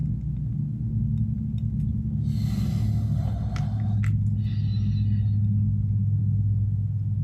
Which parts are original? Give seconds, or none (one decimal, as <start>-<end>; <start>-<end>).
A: 0.0-7.2